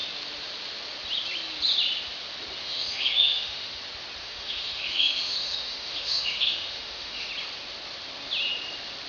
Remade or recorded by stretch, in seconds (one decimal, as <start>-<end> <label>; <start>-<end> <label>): 0.0-2.6 recorded; 2.6-3.8 remade; 3.8-4.2 recorded; 4.2-7.3 remade; 7.3-9.1 recorded